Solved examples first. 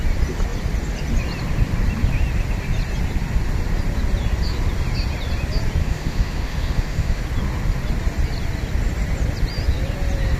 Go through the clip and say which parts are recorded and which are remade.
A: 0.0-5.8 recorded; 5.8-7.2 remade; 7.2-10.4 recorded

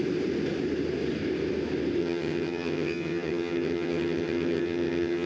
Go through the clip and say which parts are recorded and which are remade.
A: 0.0-2.0 recorded; 2.0-5.3 remade

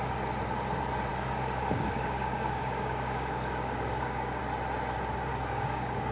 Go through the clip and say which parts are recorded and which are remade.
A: 0.0-1.1 recorded; 1.1-4.4 remade; 4.4-5.3 recorded; 5.3-6.1 remade

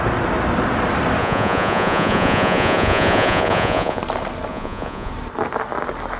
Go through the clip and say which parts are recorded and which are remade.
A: 0.0-1.2 recorded; 1.2-4.0 remade; 4.0-4.5 recorded; 4.5-5.1 remade; 5.1-6.2 recorded

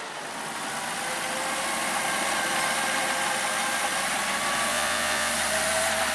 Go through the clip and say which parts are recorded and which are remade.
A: 0.0-4.7 recorded; 4.7-5.3 remade; 5.3-6.1 recorded

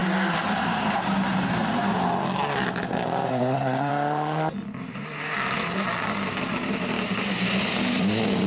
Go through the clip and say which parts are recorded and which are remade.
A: 0.0-3.3 recorded; 3.3-3.9 remade; 3.9-8.5 recorded